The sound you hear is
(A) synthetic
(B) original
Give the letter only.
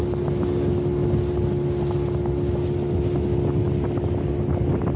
B